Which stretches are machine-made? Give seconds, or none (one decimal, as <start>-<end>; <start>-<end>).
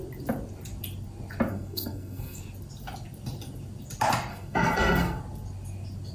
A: 1.5-2.4; 4.3-5.2